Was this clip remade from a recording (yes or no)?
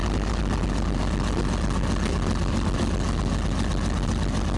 no